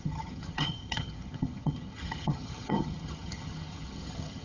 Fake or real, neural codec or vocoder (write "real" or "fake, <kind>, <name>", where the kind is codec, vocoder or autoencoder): fake, vocoder, HiFi-GAN